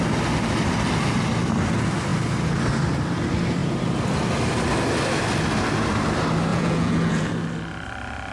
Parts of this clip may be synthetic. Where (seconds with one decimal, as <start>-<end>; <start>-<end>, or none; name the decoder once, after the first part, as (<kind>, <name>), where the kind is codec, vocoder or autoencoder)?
6.5-7.3 (vocoder, Vocos)